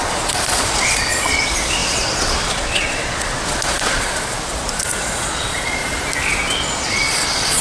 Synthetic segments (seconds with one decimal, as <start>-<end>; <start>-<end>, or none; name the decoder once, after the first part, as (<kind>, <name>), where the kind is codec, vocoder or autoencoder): 0.0-5.8 (vocoder, Vocos); 6.3-7.6

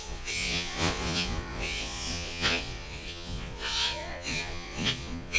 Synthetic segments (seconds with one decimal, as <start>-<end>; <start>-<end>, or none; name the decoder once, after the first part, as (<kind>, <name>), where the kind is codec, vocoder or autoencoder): 0.0-5.4 (vocoder, Vocos)